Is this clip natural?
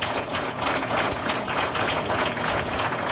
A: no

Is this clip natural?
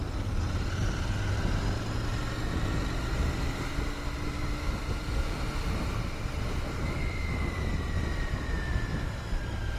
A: yes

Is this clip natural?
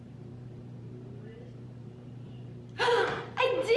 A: no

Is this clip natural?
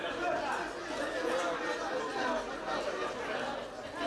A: yes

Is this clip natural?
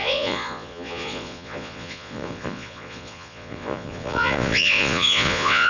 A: no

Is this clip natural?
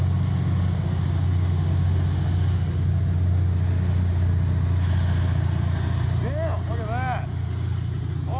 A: yes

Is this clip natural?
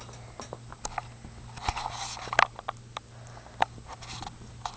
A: yes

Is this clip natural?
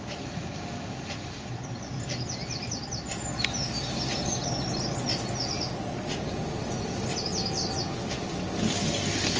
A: yes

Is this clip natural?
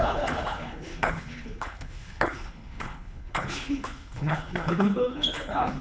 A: no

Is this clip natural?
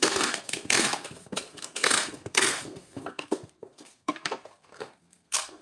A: no